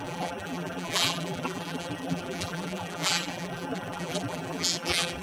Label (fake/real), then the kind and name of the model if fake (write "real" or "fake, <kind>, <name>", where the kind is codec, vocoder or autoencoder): fake, vocoder, BigVGAN v2